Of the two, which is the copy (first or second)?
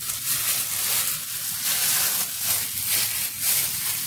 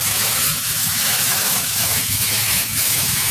second